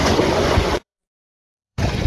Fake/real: fake